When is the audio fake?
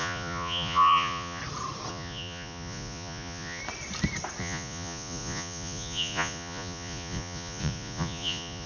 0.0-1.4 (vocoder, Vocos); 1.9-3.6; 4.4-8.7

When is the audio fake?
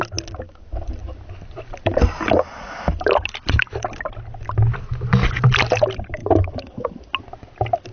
6.2-6.9 (autoencoder, DAC-VAE)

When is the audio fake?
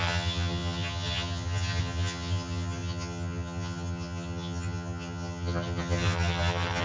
0.0-6.8 (vocoder, HiFi-GAN)